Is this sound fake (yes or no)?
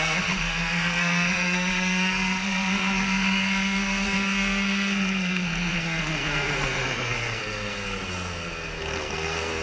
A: yes